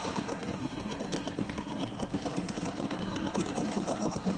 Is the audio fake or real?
fake